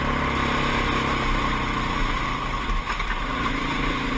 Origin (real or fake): real